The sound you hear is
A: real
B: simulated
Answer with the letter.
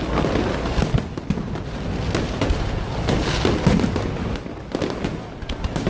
A